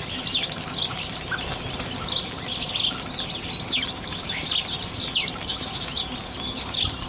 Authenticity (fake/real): real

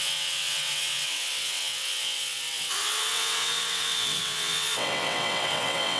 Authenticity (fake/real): fake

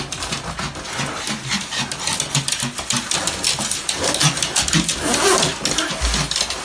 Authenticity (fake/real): real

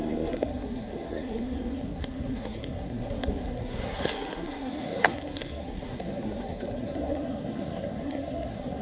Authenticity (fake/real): fake